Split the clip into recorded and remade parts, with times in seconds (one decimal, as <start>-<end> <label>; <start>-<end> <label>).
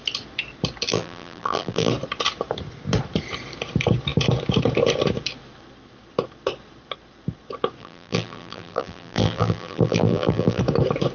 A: 0.0-0.9 recorded; 0.9-1.9 remade; 1.9-7.8 recorded; 7.8-10.6 remade; 10.6-11.1 recorded